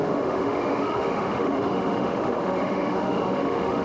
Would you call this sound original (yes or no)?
no